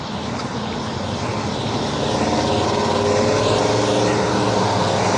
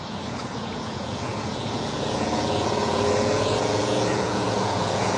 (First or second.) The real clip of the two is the first